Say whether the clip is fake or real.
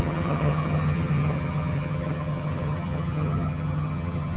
fake